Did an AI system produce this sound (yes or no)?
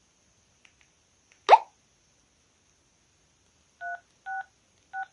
no